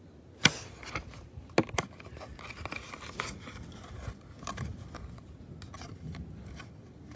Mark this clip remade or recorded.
recorded